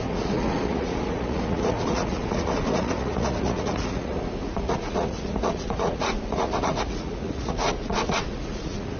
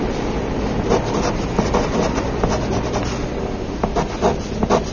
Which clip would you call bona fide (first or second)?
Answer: second